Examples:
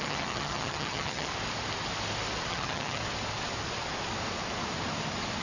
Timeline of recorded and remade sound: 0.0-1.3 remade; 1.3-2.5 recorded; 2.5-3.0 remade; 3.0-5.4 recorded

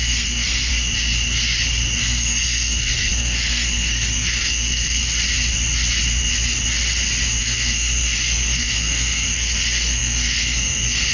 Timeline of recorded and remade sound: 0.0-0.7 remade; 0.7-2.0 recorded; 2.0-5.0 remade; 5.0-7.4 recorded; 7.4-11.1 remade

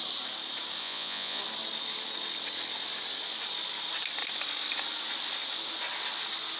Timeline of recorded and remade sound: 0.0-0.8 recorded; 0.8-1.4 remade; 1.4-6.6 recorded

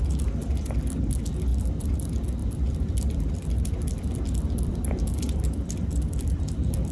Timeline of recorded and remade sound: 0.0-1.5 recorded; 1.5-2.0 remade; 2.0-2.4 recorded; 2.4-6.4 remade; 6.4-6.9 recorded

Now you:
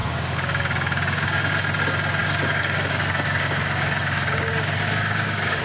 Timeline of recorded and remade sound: 0.0-1.4 remade; 1.4-2.2 recorded; 2.2-5.6 remade